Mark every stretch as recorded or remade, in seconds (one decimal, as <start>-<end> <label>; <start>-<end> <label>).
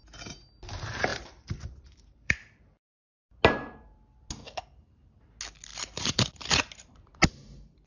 0.0-1.1 recorded; 1.1-2.4 remade; 2.4-5.7 recorded; 5.7-6.5 remade; 6.5-7.9 recorded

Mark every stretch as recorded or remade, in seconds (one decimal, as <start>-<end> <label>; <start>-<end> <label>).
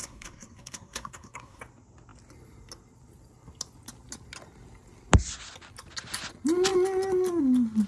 0.0-1.6 remade; 1.6-7.9 recorded